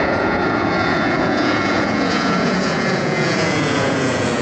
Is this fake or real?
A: fake